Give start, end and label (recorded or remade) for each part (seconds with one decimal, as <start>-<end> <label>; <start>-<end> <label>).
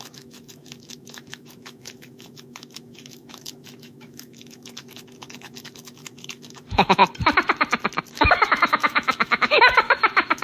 0.0-7.0 remade; 7.0-8.1 recorded; 8.1-10.4 remade